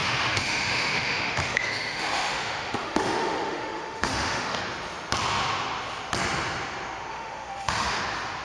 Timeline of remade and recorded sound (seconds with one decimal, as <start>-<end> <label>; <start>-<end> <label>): 0.0-4.6 remade; 4.6-7.1 recorded; 7.1-8.0 remade; 8.0-8.4 recorded

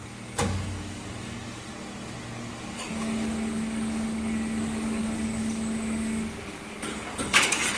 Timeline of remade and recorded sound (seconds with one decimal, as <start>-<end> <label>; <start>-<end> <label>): 0.0-1.7 remade; 1.7-2.5 recorded; 2.5-7.8 remade

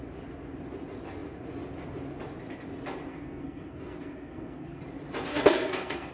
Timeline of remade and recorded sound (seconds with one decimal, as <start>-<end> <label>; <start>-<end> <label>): 0.0-3.1 recorded; 3.1-4.8 remade; 4.8-5.3 recorded; 5.3-6.1 remade

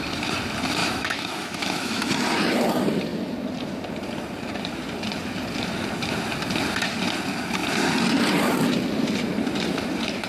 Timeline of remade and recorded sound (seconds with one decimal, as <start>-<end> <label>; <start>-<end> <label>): 0.0-0.8 recorded; 0.8-2.1 remade; 2.1-10.3 recorded

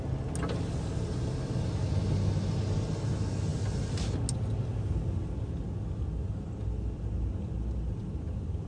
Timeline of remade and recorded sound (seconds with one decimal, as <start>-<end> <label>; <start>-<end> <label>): 0.0-8.7 recorded

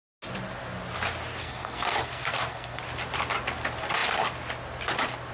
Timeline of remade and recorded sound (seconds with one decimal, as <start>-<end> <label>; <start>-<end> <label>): 0.0-1.4 recorded; 1.4-2.8 remade; 2.8-5.3 recorded

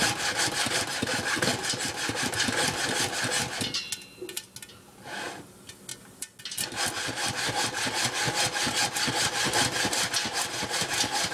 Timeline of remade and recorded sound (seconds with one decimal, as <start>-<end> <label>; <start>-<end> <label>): 0.0-11.3 recorded